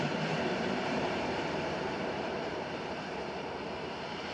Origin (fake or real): fake